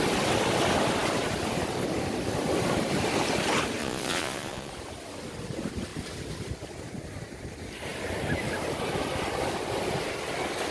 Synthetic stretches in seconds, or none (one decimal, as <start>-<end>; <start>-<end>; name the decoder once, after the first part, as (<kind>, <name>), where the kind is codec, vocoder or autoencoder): 3.8-4.7 (vocoder, Vocos)